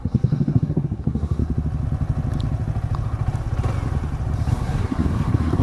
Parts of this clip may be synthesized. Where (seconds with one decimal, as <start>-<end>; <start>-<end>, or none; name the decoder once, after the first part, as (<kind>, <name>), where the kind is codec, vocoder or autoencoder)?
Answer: 0.0-1.4 (codec, SNAC); 4.5-5.6